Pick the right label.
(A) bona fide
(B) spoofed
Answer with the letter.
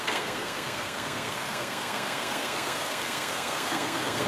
B